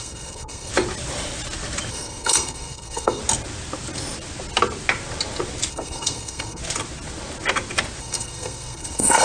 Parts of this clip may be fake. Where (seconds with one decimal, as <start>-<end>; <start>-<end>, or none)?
0.0-0.7; 1.9-3.2; 5.7-6.6; 8.0-9.2

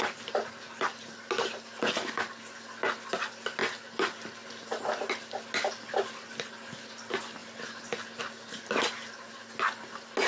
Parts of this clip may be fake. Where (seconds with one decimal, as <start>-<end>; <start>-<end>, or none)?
none

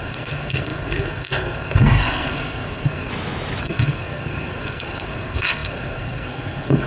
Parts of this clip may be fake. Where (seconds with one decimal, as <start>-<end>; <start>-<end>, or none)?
0.0-3.1; 3.6-6.9

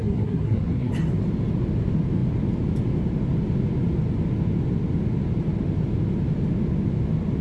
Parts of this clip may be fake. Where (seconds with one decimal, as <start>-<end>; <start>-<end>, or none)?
0.0-0.9